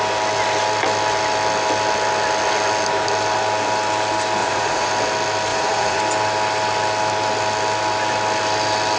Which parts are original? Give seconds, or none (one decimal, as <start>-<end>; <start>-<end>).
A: 0.0-4.4; 4.9-5.5; 6.0-9.0